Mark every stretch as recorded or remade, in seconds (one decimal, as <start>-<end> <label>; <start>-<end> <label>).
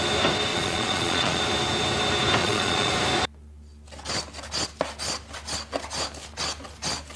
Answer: 0.0-0.5 recorded; 0.5-1.4 remade; 1.4-2.4 recorded; 2.4-2.9 remade; 2.9-7.2 recorded